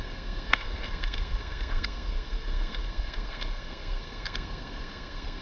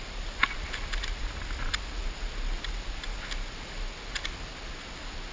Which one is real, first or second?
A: second